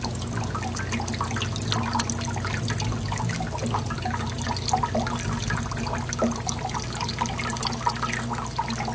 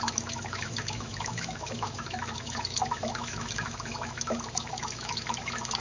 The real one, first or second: first